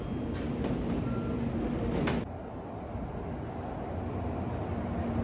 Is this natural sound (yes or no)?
yes